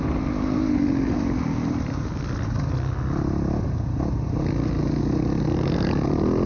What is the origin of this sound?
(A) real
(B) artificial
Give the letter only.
A